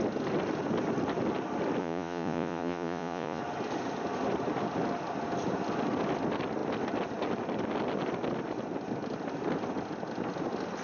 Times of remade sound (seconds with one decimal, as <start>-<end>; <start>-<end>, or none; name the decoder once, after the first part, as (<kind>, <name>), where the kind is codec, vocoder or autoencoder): 1.8-3.4 (vocoder, Vocos)